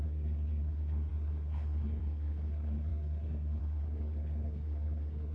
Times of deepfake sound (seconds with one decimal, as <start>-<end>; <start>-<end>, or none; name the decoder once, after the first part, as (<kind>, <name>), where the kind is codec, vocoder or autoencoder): 0.0-5.3 (codec, SNAC)